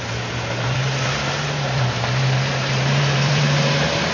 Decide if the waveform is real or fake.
fake